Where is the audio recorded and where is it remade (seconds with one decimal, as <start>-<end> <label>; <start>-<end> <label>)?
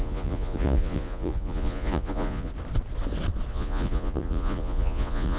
0.0-2.5 remade; 2.5-3.5 recorded; 3.5-5.4 remade